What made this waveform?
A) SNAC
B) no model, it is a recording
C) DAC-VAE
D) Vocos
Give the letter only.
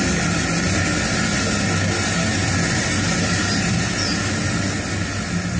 B